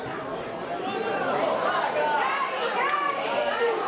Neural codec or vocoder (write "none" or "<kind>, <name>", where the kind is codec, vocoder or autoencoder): vocoder, BigVGAN v2